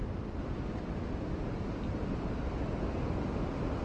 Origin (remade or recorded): remade